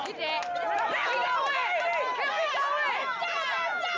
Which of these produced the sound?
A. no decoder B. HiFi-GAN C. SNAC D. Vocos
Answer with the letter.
A